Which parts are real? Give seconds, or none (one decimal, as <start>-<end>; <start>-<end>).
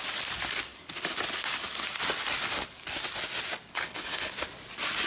0.0-3.7; 4.3-5.1